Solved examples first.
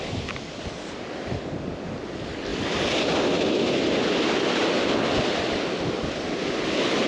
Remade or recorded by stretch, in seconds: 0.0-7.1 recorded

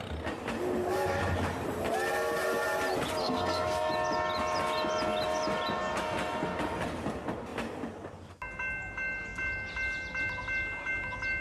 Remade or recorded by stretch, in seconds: 0.0-3.2 recorded; 3.2-3.9 remade; 3.9-11.4 recorded

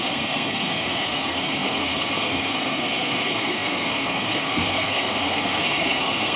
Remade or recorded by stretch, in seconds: 0.0-6.4 remade